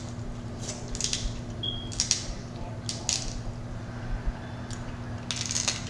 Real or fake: real